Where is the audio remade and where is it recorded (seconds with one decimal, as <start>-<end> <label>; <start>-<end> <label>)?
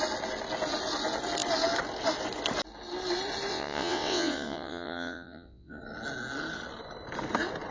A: 0.0-3.5 recorded; 3.5-5.8 remade; 5.8-7.7 recorded